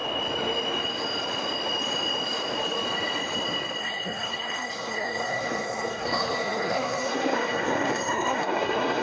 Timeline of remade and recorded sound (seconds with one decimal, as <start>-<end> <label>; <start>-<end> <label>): 0.0-3.8 recorded; 3.8-9.0 remade